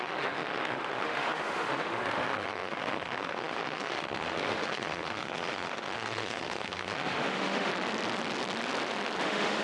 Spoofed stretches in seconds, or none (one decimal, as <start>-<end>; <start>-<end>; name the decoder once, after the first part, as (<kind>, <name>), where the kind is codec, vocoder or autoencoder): 0.0-7.7 (autoencoder, DAC-VAE); 9.2-9.6